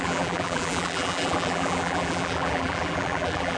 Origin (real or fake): fake